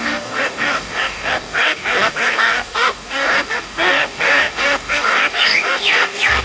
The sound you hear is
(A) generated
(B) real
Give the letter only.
A